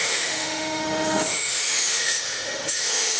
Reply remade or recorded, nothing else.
remade